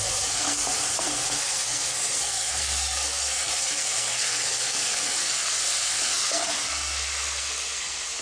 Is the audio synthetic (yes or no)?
yes